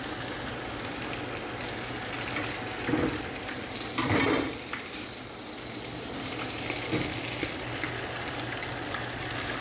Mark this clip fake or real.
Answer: real